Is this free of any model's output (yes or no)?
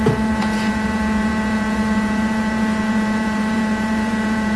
no